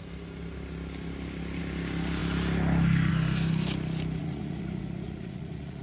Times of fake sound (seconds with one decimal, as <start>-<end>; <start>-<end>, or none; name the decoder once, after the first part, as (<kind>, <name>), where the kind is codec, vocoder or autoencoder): 4.2-5.8 (vocoder, Vocos)